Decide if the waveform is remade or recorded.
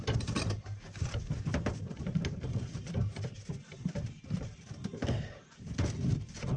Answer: recorded